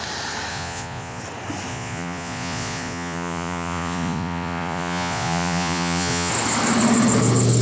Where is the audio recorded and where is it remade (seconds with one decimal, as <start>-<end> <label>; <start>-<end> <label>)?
0.0-0.5 recorded; 0.5-1.2 remade; 1.2-1.7 recorded; 1.7-6.3 remade; 6.3-7.6 recorded